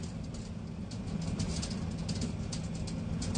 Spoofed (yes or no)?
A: no